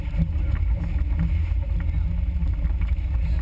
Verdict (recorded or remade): recorded